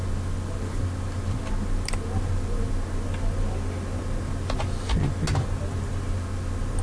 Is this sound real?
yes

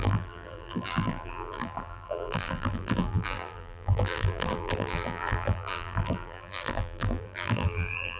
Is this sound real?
no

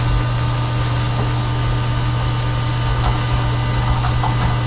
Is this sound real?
yes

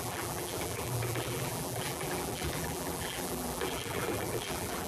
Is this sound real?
no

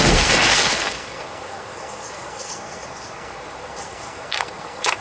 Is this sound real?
no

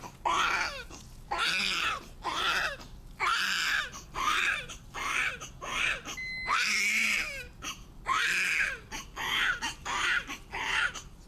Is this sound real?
yes